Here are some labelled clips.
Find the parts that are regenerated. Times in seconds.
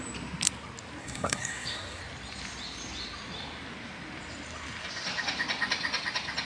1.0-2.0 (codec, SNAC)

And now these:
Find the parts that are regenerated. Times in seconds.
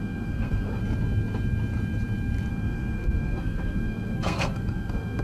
0.0-0.8 (codec, SNAC); 2.5-5.2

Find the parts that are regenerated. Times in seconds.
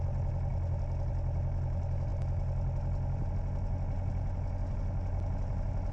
none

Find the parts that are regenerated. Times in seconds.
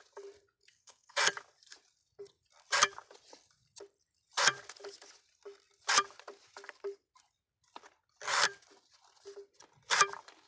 0.7-1.2 (codec, SNAC)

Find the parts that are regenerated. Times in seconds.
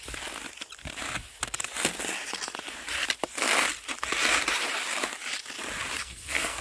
6.0-6.6 (codec, SNAC)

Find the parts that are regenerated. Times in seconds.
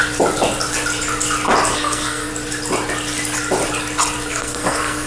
1.7-2.3 (codec, SNAC); 4.3-5.1